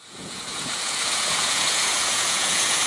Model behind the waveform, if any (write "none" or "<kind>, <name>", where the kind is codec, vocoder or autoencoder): vocoder, Vocos